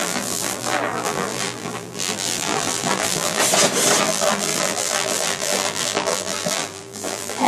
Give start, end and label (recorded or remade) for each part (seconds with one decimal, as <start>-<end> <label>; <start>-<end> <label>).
0.0-3.4 remade; 3.4-4.0 recorded; 4.0-7.5 remade